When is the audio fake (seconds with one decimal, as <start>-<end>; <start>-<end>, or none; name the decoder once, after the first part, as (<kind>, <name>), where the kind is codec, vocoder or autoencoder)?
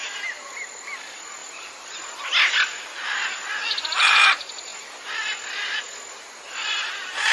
1.4-2.2 (vocoder, BigVGAN v2)